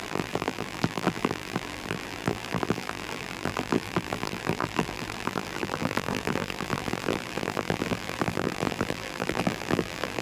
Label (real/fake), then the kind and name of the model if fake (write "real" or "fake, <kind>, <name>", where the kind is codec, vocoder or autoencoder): fake, vocoder, BigVGAN v2